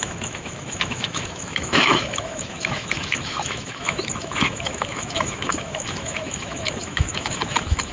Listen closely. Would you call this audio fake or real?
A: fake